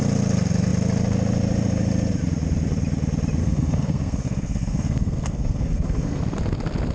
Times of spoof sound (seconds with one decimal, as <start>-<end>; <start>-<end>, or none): 3.4-6.2